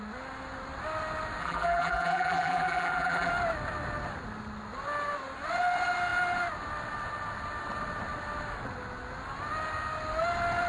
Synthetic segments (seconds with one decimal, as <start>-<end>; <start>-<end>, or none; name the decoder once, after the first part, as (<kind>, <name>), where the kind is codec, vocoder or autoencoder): 1.4-3.3 (vocoder, BigVGAN v2)